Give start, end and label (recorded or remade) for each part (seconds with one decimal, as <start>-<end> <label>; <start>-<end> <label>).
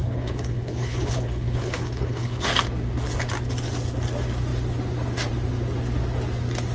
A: 0.0-2.5 remade; 2.5-6.7 recorded